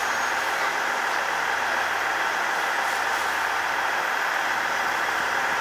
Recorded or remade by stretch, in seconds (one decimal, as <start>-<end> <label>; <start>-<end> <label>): 0.0-5.6 recorded